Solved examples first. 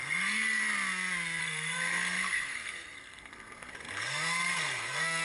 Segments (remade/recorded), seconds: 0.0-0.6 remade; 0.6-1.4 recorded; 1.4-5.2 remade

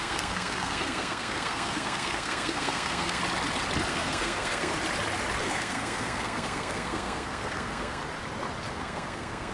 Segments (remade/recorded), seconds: 0.0-3.2 remade; 3.2-3.9 recorded; 3.9-4.7 remade; 4.7-5.4 recorded; 5.4-8.0 remade; 8.0-8.7 recorded; 8.7-9.5 remade

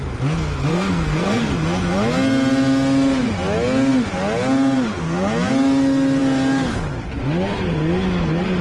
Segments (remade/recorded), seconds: 0.0-0.7 recorded; 0.7-1.4 remade; 1.4-8.6 recorded